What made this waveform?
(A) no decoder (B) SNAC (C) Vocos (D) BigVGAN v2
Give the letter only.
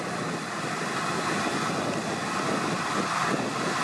A